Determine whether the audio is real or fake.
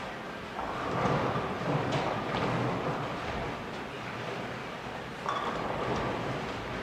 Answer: real